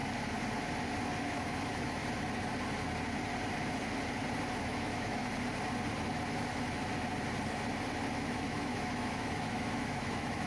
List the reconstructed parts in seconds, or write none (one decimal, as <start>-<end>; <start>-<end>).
1.2-2.0; 4.6-5.2; 6.3-6.9; 8.1-10.5